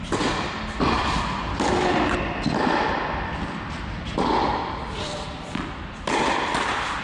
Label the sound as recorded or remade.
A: recorded